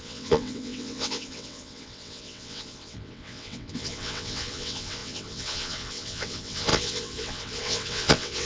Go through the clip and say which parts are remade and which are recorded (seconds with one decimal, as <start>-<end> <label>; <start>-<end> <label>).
0.0-8.5 remade